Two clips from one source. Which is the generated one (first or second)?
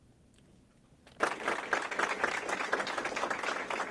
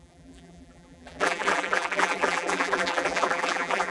second